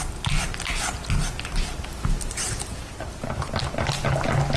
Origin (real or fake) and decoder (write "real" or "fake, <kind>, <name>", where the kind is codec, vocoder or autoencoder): real